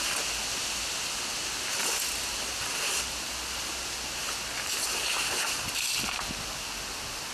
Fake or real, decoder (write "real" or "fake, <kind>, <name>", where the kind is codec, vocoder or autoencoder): real